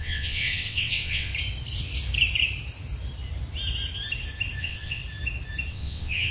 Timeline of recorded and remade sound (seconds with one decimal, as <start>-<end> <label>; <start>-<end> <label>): 0.0-1.3 remade; 1.3-4.6 recorded; 4.6-5.0 remade; 5.0-5.7 recorded; 5.7-6.3 remade